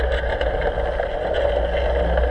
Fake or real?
real